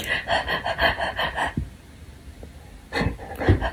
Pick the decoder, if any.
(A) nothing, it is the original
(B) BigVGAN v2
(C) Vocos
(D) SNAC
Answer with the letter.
A